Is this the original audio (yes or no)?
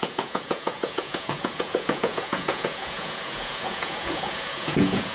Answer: no